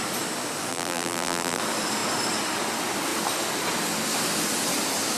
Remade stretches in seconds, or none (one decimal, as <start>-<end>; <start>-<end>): 0.7-1.6